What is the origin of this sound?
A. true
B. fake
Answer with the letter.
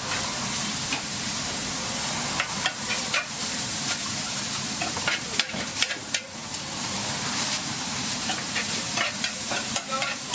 B